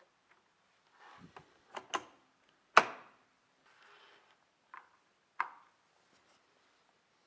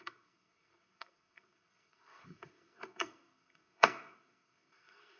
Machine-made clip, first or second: second